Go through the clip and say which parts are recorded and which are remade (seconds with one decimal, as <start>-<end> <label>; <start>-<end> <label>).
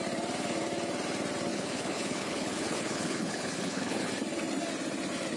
0.0-1.5 recorded; 1.5-4.1 remade; 4.1-5.4 recorded